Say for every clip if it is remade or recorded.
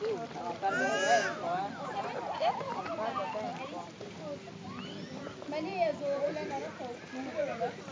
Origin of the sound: recorded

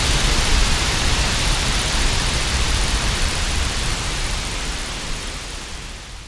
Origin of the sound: remade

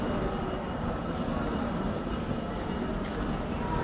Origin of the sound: recorded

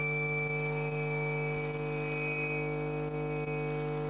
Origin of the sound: recorded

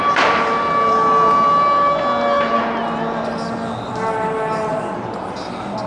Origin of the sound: recorded